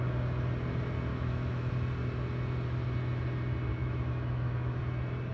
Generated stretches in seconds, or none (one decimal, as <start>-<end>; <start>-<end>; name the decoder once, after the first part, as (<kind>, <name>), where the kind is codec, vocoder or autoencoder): 1.1-1.7 (autoencoder, DAC-VAE); 3.7-4.8